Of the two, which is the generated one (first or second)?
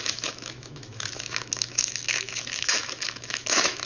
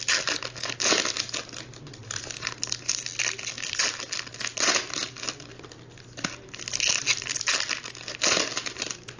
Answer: first